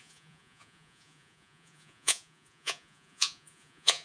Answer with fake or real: fake